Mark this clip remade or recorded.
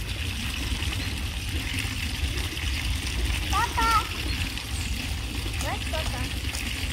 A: recorded